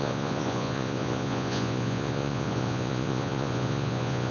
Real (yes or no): no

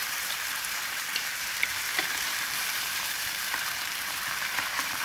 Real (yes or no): no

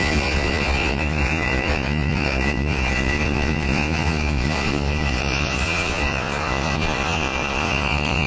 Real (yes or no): no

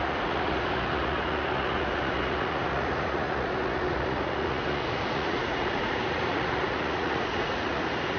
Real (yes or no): no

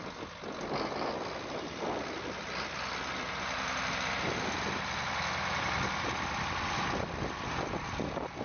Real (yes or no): yes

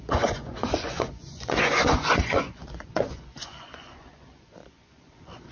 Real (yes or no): no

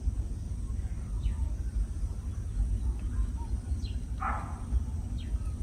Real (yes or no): yes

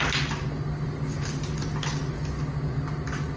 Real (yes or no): yes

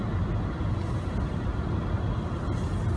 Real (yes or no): yes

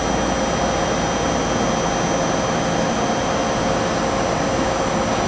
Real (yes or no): yes